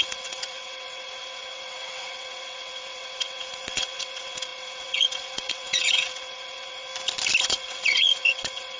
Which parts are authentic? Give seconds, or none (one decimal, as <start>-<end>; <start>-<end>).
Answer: 6.9-7.4